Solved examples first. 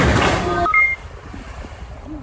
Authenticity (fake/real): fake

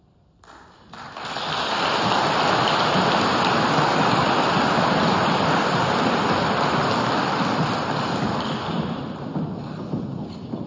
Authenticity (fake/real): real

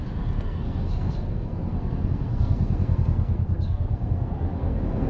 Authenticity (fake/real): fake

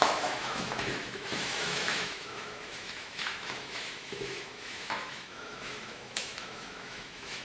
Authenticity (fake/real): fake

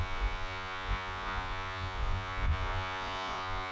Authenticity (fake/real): fake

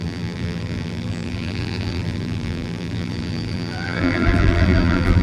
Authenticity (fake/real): fake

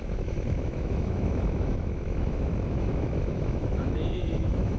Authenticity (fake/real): fake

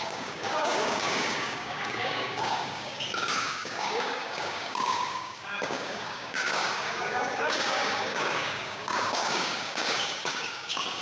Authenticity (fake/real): fake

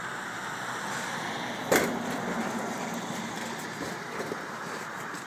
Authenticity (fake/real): real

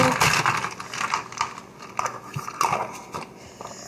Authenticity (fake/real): real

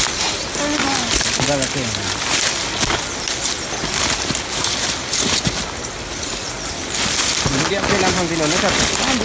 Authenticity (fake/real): real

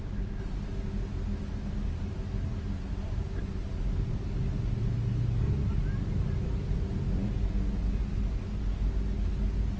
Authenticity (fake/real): real